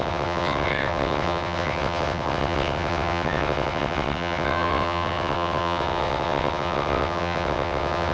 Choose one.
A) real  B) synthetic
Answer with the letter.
B